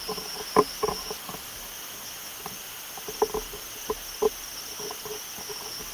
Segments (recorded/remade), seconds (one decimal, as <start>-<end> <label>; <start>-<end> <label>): 0.0-1.2 recorded; 1.2-2.3 remade; 2.3-5.9 recorded